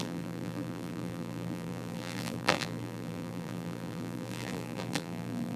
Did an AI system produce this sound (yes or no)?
yes